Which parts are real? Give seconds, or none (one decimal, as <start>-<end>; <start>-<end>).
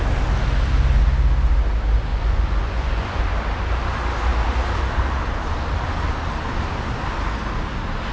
0.0-2.1; 3.2-8.1